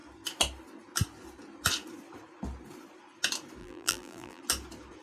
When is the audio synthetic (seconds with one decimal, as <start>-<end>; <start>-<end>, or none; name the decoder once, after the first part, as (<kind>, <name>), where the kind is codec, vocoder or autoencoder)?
3.6-4.4 (vocoder, BigVGAN v2)